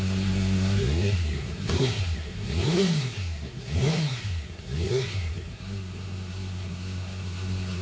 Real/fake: fake